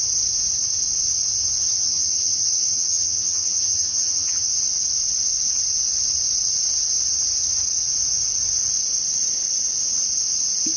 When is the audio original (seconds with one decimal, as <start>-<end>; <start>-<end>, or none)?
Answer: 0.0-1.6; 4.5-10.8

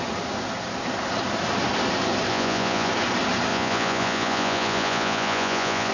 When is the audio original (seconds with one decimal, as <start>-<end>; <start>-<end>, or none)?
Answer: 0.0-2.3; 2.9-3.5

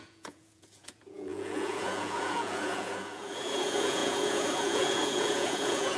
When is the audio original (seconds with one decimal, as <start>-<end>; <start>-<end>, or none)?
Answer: none

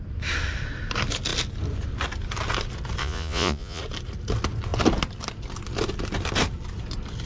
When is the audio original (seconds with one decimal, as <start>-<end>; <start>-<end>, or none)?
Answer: 0.0-3.0; 3.8-7.3